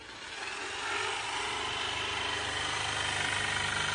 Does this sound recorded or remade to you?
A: recorded